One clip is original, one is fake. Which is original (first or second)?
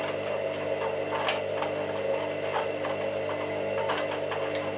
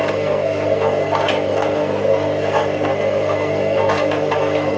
first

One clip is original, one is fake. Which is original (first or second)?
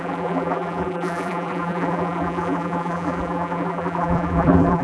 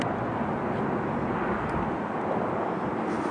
second